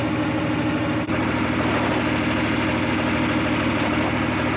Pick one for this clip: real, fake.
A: real